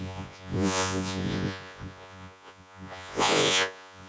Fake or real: fake